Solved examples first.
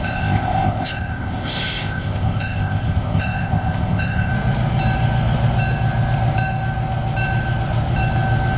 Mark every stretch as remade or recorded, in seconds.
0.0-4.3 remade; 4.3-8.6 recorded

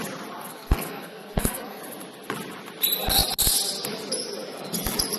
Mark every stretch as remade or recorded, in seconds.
0.0-0.5 recorded; 0.5-1.8 remade; 1.8-5.2 recorded